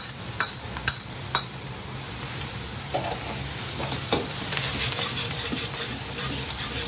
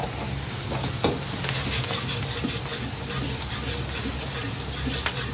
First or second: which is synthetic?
first